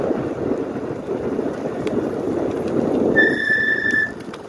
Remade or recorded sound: remade